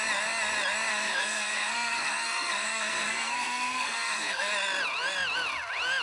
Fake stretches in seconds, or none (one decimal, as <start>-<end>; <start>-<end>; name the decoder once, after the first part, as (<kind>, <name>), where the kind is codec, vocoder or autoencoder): 0.9-4.5 (codec, SNAC)